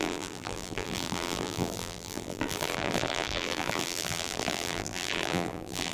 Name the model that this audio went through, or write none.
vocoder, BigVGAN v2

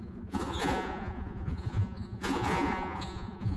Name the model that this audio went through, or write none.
vocoder, Vocos